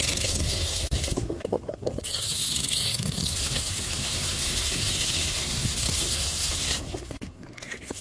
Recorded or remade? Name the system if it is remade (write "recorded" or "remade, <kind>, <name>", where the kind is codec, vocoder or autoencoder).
remade, codec, SNAC